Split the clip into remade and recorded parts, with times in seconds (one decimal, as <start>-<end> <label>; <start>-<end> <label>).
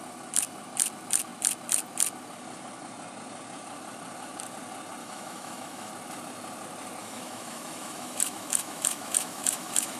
0.0-5.0 recorded; 5.0-5.9 remade; 5.9-7.0 recorded; 7.0-10.0 remade